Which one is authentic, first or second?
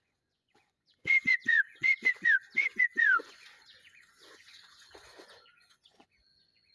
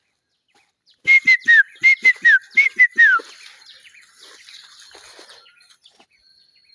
second